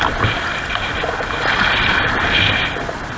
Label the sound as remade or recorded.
remade